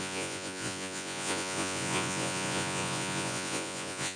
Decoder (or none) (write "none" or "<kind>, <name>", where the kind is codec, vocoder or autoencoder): vocoder, Vocos